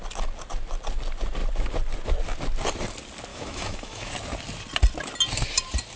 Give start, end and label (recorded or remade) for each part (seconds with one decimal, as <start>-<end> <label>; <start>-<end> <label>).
0.0-3.3 recorded; 3.3-4.1 remade; 4.1-6.0 recorded